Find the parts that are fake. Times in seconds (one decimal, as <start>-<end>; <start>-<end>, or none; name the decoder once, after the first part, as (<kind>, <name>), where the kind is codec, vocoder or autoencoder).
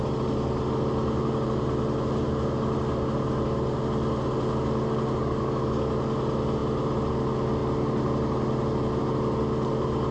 5.2-5.9 (codec, DAC)